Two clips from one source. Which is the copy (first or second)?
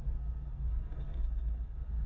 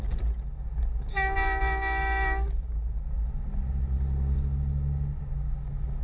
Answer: first